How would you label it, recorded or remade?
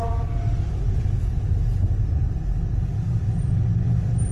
recorded